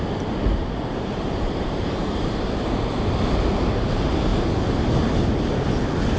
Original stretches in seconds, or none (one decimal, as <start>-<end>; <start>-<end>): 0.0-0.6; 3.0-6.2